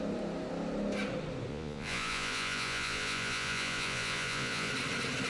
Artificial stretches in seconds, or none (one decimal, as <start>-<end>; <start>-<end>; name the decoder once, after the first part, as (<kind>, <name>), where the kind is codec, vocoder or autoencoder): 1.5-4.7 (vocoder, Vocos)